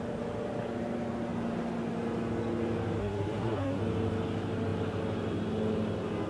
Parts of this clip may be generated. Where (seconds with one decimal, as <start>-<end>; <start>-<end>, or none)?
3.0-3.8